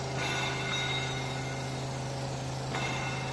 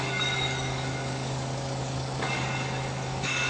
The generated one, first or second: second